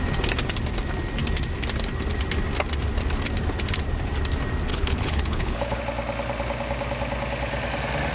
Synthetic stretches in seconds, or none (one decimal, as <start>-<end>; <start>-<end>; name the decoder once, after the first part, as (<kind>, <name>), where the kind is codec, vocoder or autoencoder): 4.7-5.8 (codec, HILCodec)